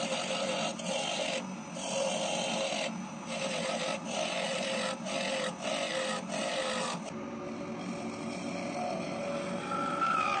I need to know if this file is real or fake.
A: real